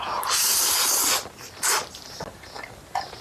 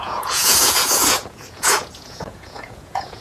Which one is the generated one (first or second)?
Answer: second